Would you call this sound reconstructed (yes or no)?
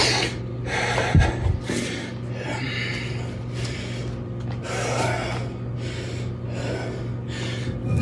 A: no